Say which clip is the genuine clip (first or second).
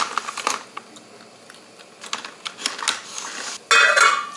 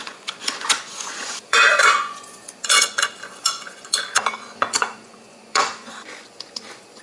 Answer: first